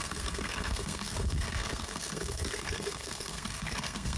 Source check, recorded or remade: remade